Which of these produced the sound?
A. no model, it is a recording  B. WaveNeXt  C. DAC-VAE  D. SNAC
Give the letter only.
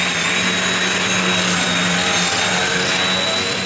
A